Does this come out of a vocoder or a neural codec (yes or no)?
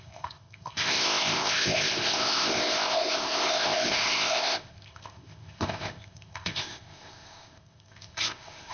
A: yes